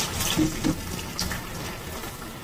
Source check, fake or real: real